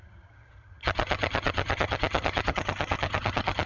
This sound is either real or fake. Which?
fake